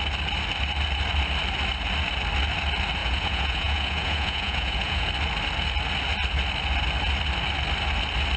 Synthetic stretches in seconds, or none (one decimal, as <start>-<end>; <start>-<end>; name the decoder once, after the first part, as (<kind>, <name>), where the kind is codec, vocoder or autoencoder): 3.0-5.1 (vocoder, Vocos)